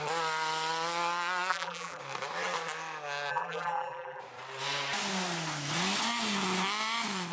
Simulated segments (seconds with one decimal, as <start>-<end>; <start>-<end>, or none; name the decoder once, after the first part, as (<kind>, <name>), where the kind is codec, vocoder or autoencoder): 1.5-2.0 (vocoder, BigVGAN v2); 3.3-4.2